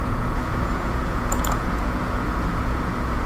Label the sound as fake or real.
fake